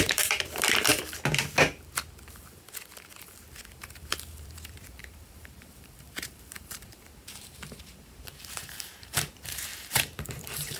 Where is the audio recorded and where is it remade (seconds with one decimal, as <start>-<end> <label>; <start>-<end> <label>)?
0.0-0.9 remade; 0.9-3.8 recorded; 3.8-10.8 remade